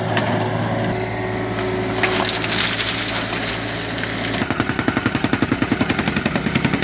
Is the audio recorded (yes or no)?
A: yes